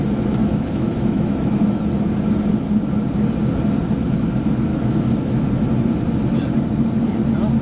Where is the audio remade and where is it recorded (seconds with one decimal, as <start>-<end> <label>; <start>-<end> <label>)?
0.0-0.4 recorded; 0.4-1.9 remade; 1.9-4.7 recorded; 4.7-5.4 remade; 5.4-7.6 recorded